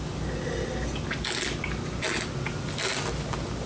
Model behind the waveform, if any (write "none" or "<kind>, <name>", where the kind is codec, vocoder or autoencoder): none